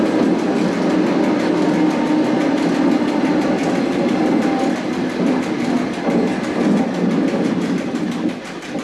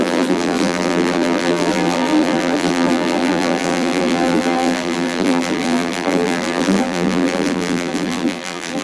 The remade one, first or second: second